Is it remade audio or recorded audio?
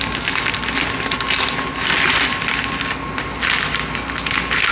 recorded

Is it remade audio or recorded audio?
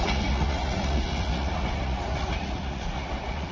remade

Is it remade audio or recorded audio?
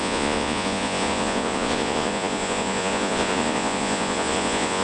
remade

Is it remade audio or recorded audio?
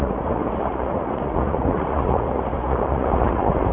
remade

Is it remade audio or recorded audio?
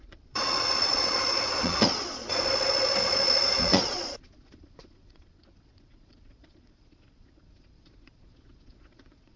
remade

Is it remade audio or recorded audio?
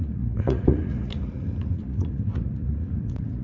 remade